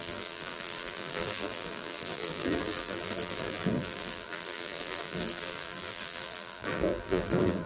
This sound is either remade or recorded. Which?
remade